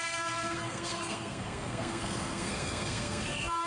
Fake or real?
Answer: fake